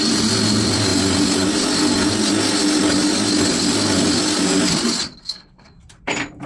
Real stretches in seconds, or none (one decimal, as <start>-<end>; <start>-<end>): 0.0-5.2; 5.7-6.5